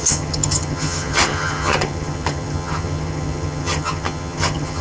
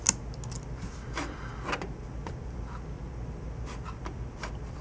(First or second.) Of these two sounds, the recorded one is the second